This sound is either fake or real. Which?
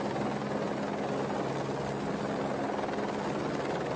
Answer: real